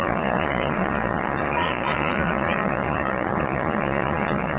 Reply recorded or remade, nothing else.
remade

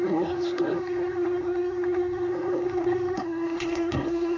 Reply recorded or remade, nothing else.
remade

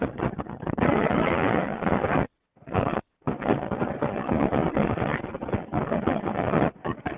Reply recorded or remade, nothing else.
remade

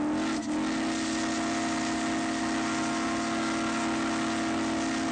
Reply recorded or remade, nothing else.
recorded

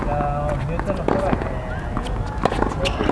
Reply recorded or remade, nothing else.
recorded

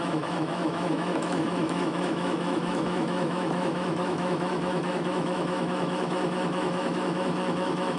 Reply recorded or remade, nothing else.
remade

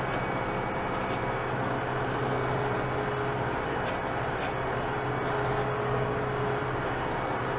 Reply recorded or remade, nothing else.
recorded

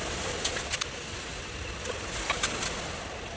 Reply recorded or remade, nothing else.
recorded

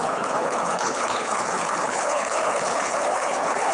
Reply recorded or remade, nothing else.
remade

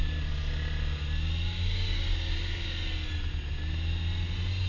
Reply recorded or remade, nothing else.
recorded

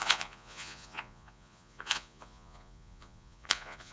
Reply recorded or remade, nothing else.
remade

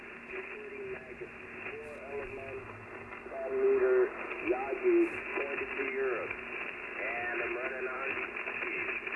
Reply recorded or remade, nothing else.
recorded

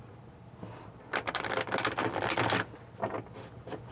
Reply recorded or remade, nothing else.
recorded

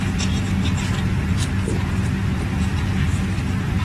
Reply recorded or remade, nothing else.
recorded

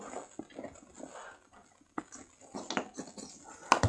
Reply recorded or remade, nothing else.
recorded